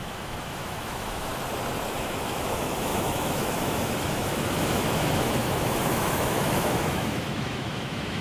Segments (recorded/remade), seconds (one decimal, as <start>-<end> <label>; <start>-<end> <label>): 0.0-1.3 remade; 1.3-2.0 recorded; 2.0-8.2 remade